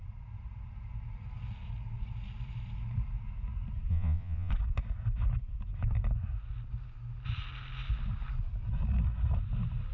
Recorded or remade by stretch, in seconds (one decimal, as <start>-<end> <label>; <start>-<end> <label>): 0.0-3.9 recorded; 3.9-4.5 remade; 4.5-9.9 recorded